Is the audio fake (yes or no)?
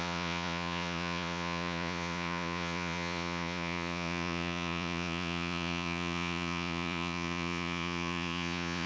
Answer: yes